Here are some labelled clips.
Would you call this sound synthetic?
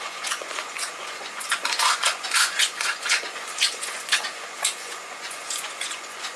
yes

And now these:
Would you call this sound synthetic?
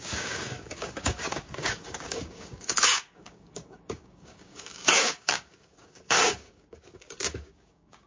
yes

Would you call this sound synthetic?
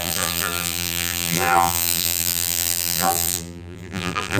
yes